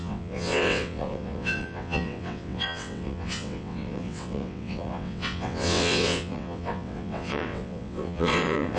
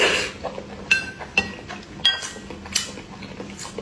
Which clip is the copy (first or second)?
first